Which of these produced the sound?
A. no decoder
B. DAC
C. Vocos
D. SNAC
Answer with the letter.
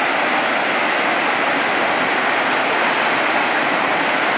A